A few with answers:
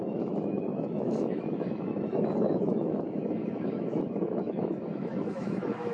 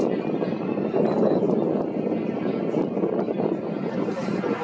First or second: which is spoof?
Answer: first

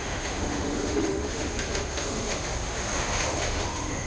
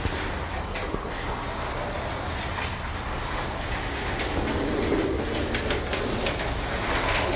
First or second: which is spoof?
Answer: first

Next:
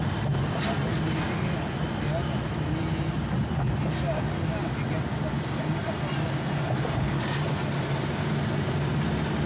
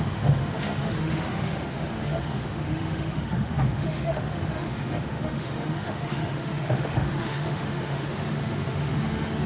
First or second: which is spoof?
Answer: second